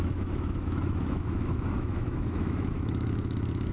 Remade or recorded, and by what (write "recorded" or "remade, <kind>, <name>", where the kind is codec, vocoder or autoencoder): remade, autoencoder, DAC-VAE